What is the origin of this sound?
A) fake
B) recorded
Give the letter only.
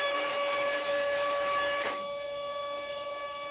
A